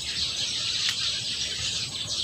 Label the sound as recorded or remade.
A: remade